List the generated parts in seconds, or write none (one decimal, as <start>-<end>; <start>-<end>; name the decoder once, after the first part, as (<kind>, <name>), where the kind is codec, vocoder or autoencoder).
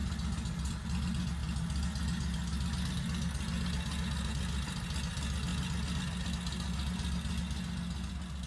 none